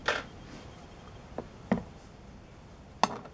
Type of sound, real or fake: real